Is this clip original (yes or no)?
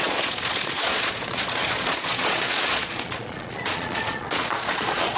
no